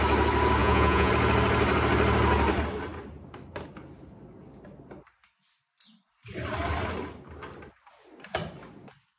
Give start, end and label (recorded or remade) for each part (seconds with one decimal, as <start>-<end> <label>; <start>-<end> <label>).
0.0-0.6 recorded; 0.6-1.1 remade; 1.1-9.2 recorded